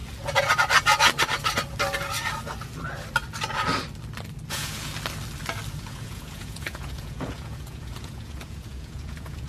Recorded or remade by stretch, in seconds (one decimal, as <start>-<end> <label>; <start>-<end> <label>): 0.0-4.5 recorded; 4.5-4.9 remade; 4.9-5.7 recorded; 5.7-9.5 remade